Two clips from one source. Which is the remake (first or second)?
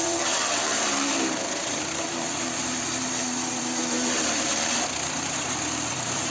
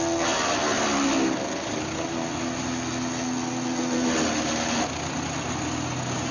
first